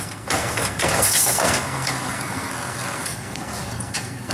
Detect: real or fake fake